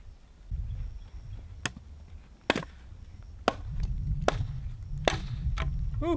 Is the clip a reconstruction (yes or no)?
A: no